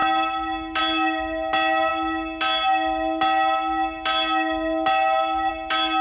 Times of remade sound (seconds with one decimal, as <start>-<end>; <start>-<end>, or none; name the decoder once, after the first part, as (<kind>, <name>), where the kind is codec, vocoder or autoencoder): none